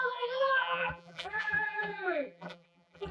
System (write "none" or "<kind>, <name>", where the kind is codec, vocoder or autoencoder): vocoder, BigVGAN v2